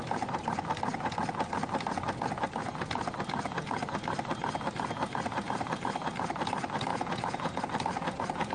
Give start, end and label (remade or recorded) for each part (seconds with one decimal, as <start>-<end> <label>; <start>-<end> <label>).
0.0-6.9 recorded; 6.9-7.6 remade; 7.6-8.5 recorded